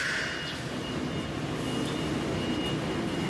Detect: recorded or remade recorded